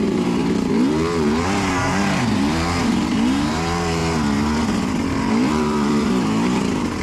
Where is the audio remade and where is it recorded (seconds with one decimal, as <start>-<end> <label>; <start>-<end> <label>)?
0.0-4.0 remade; 4.0-5.1 recorded; 5.1-7.0 remade